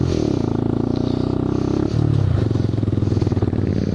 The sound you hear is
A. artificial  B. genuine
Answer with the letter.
B